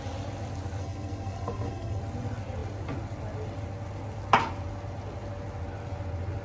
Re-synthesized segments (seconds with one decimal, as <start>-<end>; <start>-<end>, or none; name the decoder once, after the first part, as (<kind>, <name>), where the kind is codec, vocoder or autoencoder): 0.8-2.0 (codec, SNAC)